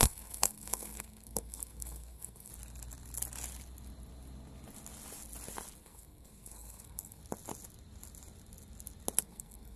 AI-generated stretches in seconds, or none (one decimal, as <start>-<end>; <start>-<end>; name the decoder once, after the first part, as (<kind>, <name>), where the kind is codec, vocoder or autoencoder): 0.0-2.5 (codec, SNAC); 5.8-7.2; 9.2-9.8